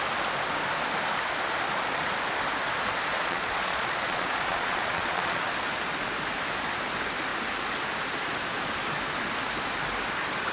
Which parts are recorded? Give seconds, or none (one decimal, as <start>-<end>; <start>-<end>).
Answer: 0.0-3.1; 5.5-10.5